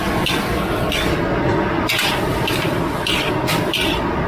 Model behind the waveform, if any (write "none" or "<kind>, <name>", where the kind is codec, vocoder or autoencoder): none